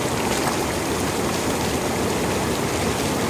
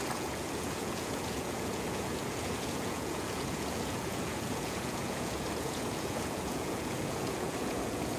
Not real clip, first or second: second